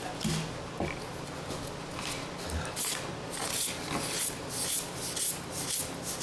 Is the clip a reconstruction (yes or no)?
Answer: no